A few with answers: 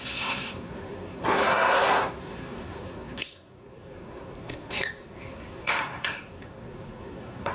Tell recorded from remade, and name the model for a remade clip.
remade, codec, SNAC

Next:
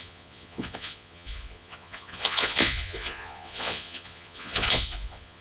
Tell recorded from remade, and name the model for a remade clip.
remade, vocoder, Vocos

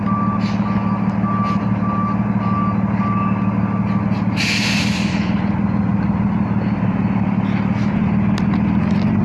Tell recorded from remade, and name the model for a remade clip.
recorded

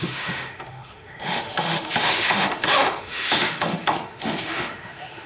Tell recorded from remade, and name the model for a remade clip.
remade, autoencoder, DAC-VAE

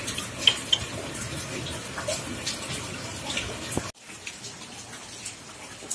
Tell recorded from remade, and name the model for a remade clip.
recorded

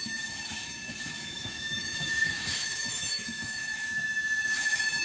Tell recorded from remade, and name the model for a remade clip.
remade, autoencoder, DAC-VAE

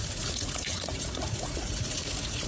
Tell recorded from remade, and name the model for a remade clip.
remade, vocoder, Vocos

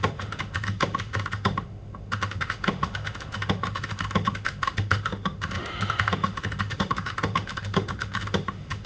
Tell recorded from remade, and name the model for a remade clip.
remade, autoencoder, DAC-VAE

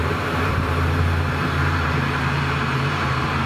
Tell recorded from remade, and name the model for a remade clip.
remade, vocoder, BigVGAN v2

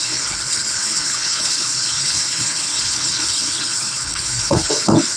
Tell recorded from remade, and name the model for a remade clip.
remade, codec, HILCodec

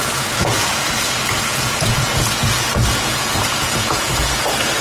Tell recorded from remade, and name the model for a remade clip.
remade, vocoder, Vocos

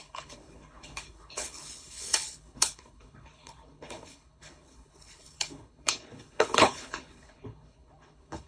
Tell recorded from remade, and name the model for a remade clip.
remade, codec, HILCodec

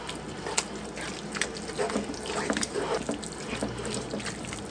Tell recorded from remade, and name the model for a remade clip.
recorded